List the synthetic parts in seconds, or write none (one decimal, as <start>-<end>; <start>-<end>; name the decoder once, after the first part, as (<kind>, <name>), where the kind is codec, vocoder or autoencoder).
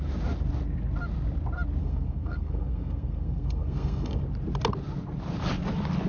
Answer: 1.8-4.2 (codec, SNAC)